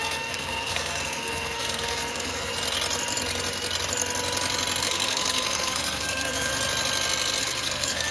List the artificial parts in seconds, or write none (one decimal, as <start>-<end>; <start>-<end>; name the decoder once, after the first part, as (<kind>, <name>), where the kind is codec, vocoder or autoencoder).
0.0-2.5 (codec, SNAC); 4.8-6.5; 7.4-8.1